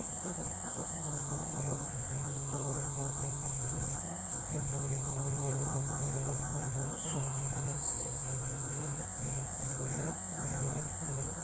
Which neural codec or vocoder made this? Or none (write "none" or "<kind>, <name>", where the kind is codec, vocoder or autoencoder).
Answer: codec, SNAC